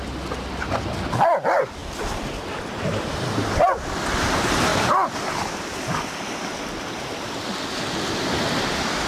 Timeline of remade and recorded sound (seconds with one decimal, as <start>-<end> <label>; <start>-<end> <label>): 0.0-1.8 recorded; 1.8-3.4 remade; 3.4-9.1 recorded